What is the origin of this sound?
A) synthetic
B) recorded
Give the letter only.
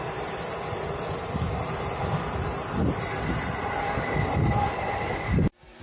A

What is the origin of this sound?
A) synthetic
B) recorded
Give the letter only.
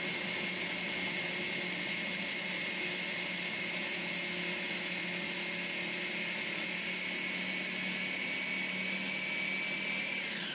B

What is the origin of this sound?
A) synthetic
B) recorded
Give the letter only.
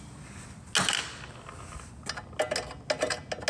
B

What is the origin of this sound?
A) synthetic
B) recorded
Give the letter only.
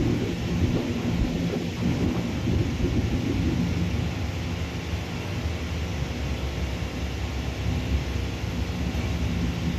B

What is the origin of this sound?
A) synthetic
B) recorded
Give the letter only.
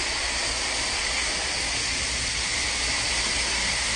B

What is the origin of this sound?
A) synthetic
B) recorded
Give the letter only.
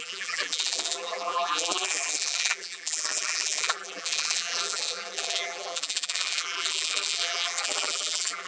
A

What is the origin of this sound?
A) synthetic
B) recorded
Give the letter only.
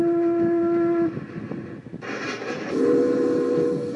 B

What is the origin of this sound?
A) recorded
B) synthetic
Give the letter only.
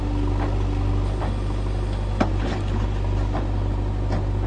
A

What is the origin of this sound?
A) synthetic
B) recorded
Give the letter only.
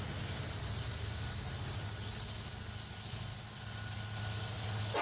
B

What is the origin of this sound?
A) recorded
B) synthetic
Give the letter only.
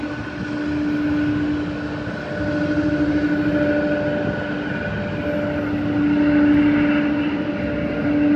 A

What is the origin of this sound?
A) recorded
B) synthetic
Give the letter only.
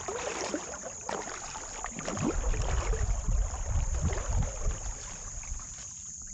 B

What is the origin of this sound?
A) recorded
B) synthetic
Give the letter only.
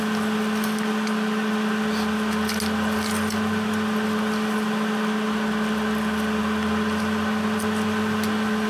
A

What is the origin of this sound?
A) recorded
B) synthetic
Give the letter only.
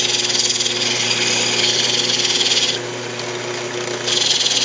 A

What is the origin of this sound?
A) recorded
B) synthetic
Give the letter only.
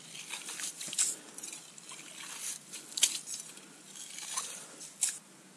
A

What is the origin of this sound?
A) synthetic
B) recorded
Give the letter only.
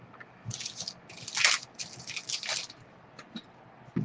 B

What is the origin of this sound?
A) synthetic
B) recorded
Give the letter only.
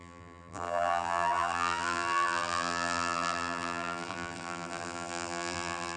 A